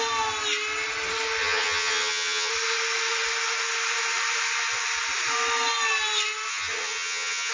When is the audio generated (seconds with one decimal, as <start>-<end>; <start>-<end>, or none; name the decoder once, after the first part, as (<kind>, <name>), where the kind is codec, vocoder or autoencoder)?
1.4-2.5 (vocoder, HiFi-GAN); 6.5-7.5